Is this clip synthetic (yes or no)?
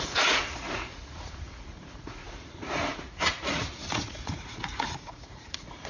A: yes